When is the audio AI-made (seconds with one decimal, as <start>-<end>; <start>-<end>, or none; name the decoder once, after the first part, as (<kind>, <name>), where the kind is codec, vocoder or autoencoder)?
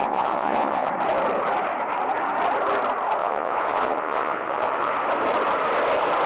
0.0-0.9 (vocoder, Vocos); 3.2-4.9